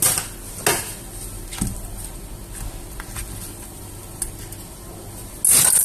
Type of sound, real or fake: real